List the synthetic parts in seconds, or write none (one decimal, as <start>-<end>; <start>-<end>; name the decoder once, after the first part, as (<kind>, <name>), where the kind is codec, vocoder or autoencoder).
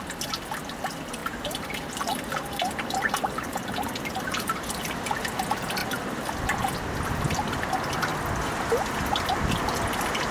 1.2-5.0 (vocoder, BigVGAN v2); 5.8-6.3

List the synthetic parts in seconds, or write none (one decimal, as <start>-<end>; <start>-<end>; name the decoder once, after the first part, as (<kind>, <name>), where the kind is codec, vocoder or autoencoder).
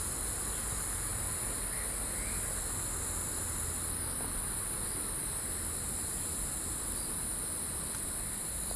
none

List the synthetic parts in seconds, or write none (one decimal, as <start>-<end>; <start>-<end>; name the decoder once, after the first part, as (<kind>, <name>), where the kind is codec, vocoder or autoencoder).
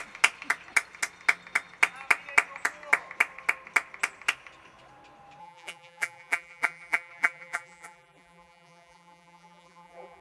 5.4-10.2 (vocoder, BigVGAN v2)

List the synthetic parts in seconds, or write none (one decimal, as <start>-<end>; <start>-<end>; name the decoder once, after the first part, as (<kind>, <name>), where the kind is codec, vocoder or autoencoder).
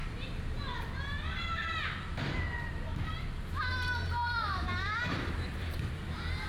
4.2-5.9 (vocoder, BigVGAN v2)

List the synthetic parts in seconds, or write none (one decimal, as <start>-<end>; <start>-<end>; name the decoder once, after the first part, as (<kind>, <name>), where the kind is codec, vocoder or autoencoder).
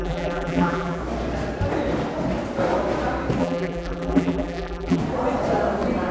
0.0-1.0 (vocoder, BigVGAN v2); 3.4-5.0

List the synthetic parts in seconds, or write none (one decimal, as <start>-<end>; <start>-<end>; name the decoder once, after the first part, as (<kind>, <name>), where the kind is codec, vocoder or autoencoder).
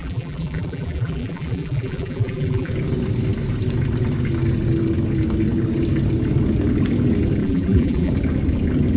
0.0-2.7 (vocoder, BigVGAN v2); 7.4-8.1